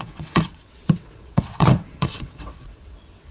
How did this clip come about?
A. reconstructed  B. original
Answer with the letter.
A